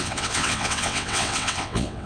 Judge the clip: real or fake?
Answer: fake